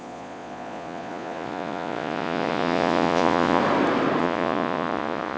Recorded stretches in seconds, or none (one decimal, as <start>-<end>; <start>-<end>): 3.6-4.2